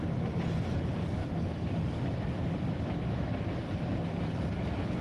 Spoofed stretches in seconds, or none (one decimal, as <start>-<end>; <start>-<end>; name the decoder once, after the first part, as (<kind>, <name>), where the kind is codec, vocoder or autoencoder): none